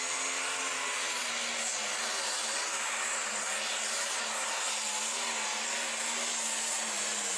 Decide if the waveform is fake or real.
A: real